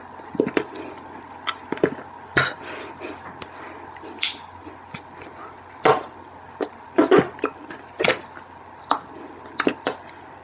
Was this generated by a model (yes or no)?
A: no